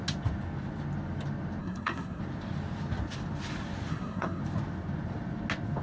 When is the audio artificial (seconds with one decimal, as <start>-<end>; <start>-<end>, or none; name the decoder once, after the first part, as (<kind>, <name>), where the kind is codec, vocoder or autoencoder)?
1.6-2.2 (codec, SNAC); 3.9-4.4